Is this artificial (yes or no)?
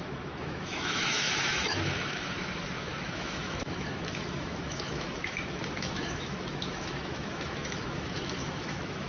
yes